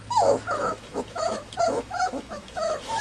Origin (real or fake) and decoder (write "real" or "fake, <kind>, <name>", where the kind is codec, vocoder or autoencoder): fake, autoencoder, DAC-VAE